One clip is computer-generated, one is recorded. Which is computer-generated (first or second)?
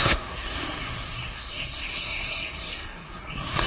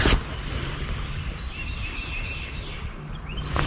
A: first